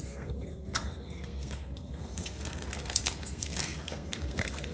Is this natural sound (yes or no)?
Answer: no